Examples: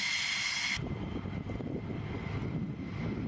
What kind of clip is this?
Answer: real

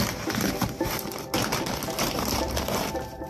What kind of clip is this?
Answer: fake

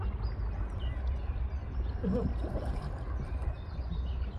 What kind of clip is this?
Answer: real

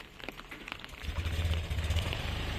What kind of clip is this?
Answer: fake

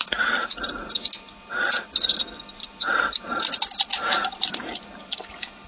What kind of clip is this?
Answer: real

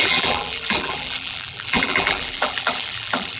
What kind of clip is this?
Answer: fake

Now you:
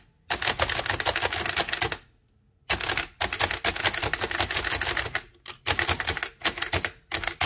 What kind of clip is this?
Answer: real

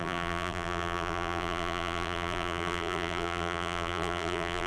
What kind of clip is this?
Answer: fake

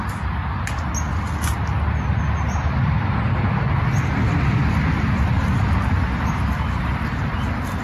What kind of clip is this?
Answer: real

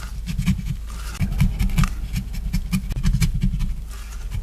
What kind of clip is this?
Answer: real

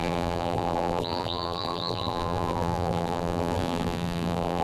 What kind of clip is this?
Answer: fake